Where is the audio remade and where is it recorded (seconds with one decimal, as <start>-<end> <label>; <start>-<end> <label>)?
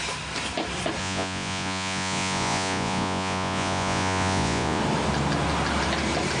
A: 0.0-1.0 recorded; 1.0-4.8 remade; 4.8-6.4 recorded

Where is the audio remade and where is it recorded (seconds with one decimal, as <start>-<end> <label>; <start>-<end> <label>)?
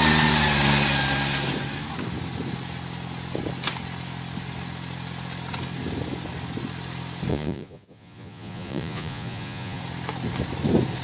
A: 0.0-7.3 recorded; 7.3-9.8 remade; 9.8-11.0 recorded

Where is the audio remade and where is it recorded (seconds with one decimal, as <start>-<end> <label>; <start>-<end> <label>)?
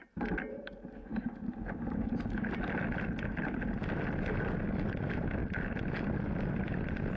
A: 0.0-7.2 recorded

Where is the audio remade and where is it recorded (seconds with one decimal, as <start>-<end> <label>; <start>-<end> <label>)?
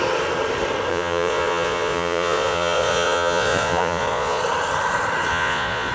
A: 0.0-0.9 recorded; 0.9-4.4 remade; 4.4-5.3 recorded; 5.3-5.9 remade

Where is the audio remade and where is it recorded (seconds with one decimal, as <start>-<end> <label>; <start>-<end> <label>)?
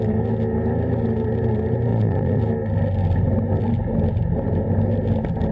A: 0.0-1.9 recorded; 1.9-2.4 remade; 2.4-5.5 recorded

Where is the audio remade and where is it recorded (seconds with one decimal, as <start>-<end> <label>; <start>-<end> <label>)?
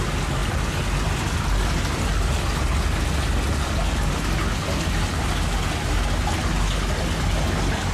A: 0.0-7.9 recorded